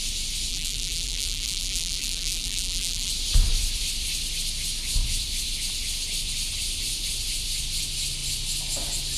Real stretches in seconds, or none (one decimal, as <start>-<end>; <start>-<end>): 0.0-0.5; 3.1-9.2